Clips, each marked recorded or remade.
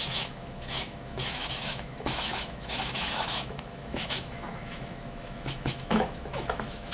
remade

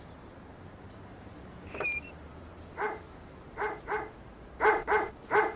remade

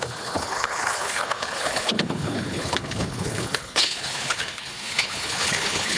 remade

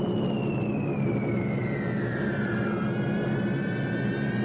recorded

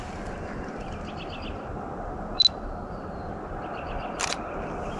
recorded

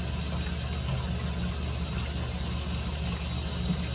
recorded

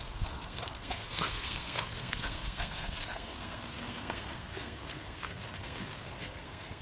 remade